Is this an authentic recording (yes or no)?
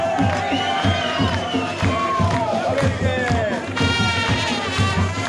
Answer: no